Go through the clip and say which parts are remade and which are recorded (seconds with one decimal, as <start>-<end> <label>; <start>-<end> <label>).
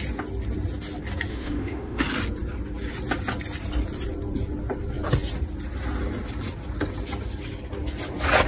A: 0.0-1.3 recorded; 1.3-2.0 remade; 2.0-8.5 recorded